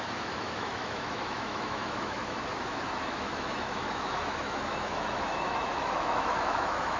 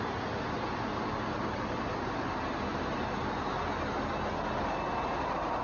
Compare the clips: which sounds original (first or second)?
second